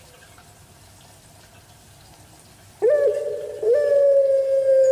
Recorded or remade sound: recorded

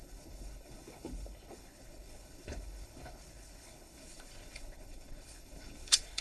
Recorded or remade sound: remade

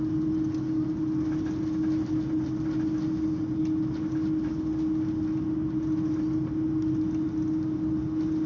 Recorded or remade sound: recorded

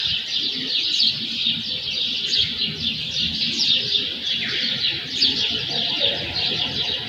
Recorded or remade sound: recorded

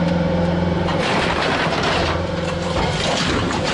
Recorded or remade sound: remade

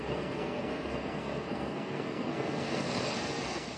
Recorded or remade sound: remade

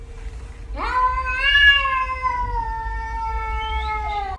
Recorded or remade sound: remade